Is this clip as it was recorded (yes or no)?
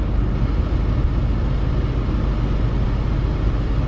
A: yes